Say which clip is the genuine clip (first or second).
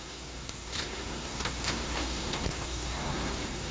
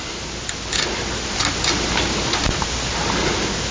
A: second